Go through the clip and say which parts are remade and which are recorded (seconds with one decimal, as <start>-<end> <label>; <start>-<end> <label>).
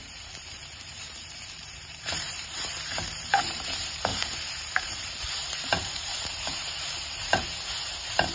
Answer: 0.0-8.3 remade